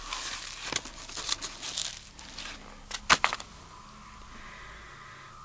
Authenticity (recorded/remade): recorded